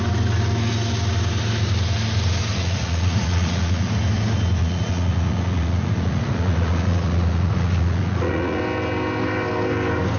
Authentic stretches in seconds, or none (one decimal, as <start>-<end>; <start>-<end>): 0.0-2.5; 3.9-4.6; 8.6-10.2